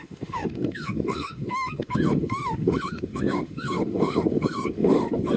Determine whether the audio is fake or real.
fake